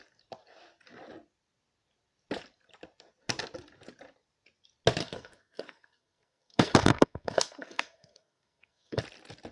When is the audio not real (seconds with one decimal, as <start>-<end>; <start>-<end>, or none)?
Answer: 5.0-9.0